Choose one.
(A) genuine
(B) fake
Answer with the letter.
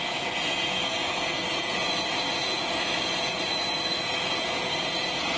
B